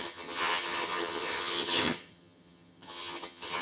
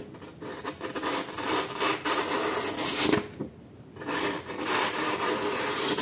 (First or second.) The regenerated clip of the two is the first